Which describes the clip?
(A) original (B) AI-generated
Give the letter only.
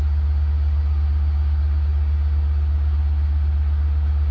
A